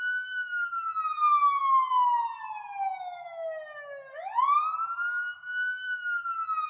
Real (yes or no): yes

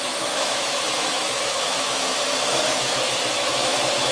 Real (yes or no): no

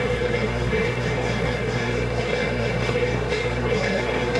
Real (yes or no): no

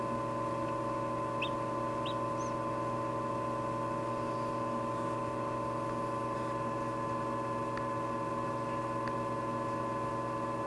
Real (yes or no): yes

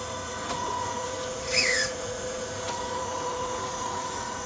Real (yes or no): no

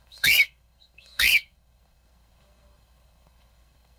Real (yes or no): no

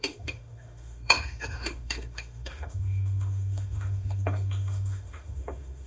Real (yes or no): no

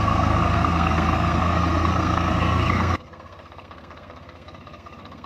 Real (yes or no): no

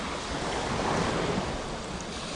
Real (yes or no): yes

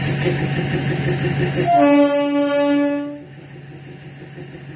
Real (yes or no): yes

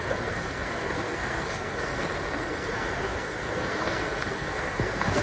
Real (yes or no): no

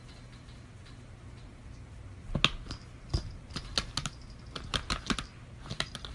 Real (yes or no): yes